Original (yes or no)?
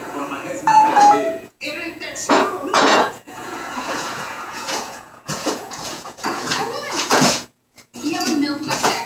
no